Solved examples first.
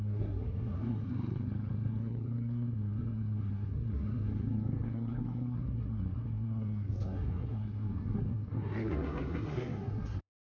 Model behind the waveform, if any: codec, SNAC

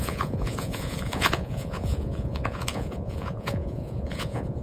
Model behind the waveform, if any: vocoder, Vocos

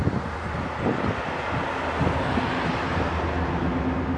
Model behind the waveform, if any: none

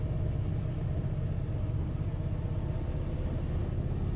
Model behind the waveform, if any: none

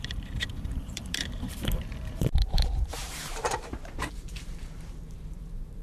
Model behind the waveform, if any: vocoder, BigVGAN v2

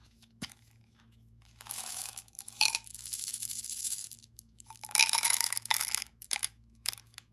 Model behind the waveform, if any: autoencoder, DAC-VAE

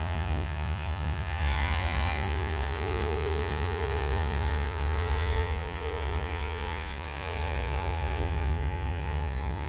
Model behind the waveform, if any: vocoder, Vocos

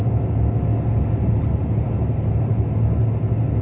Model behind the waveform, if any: none